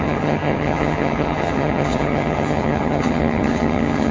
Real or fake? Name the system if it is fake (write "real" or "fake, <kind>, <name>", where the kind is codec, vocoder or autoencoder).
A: fake, vocoder, HiFi-GAN